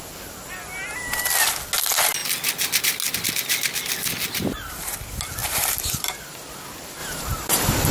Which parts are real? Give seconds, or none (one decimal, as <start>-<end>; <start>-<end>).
0.0-5.4; 6.2-7.0